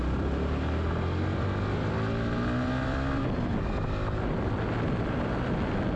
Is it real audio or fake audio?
real